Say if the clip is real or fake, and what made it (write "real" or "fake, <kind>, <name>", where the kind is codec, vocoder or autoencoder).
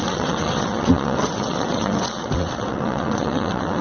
fake, vocoder, WaveNeXt